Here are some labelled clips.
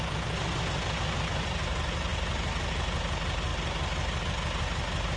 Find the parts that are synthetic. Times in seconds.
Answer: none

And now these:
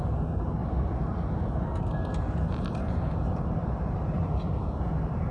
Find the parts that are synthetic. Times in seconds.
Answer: none

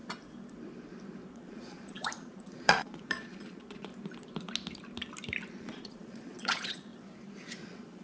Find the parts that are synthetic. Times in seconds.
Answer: 1.3-3.9 (vocoder, Vocos); 5.5-6.9; 7.6-8.0

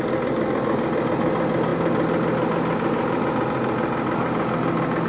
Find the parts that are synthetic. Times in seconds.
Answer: none

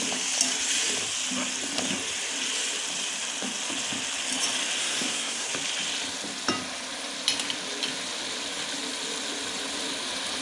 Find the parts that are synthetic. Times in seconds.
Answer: 4.8-5.5 (codec, SNAC)

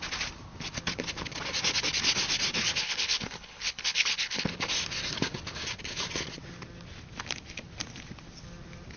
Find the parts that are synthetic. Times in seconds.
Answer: 2.8-4.5 (codec, HILCodec)